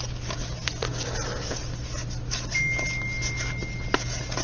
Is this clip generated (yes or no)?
no